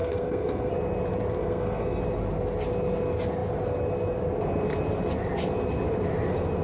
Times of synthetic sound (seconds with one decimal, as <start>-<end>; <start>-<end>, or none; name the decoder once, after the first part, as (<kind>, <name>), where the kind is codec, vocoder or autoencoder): 0.0-0.7 (codec, SNAC); 1.4-2.0